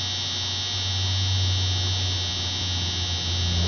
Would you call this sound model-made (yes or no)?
no